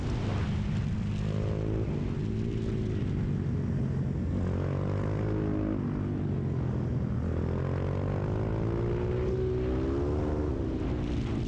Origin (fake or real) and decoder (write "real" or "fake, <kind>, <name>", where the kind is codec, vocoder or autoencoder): real